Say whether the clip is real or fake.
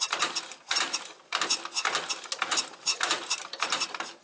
real